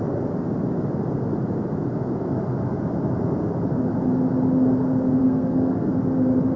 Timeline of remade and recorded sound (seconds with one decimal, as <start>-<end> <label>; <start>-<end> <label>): 0.0-5.2 recorded; 5.2-5.9 remade; 5.9-6.6 recorded